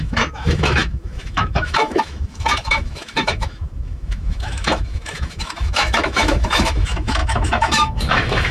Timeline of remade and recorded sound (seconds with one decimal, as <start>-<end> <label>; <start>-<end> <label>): 0.0-8.5 remade